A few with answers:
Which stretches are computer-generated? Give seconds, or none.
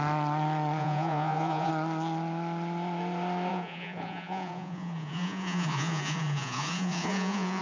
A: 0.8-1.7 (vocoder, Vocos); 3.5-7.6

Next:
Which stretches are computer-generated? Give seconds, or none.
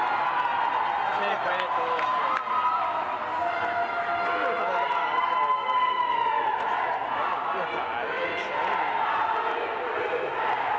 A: none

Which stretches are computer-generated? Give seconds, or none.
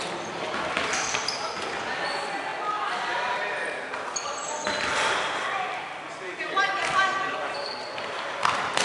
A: 0.0-2.5 (vocoder, BigVGAN v2); 3.9-8.8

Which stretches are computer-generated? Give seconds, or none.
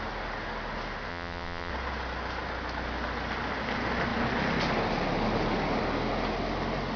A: 1.1-1.7 (vocoder, WaveNeXt)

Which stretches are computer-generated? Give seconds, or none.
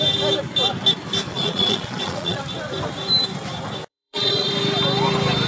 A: 1.3-2.4 (vocoder, Vocos); 3.9-4.5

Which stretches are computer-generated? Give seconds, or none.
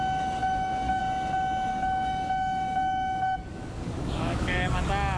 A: 0.4-1.0 (codec, DAC); 1.7-4.8